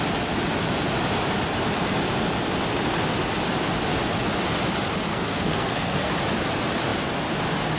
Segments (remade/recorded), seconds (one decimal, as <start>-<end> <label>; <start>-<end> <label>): 0.0-5.1 recorded; 5.1-6.1 remade; 6.1-7.8 recorded